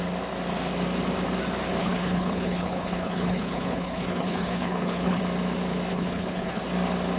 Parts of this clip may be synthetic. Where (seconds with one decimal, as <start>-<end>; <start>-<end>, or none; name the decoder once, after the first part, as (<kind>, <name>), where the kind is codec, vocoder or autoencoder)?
1.8-5.2 (codec, HILCodec); 5.9-6.6